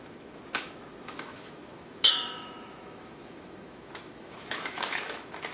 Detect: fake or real fake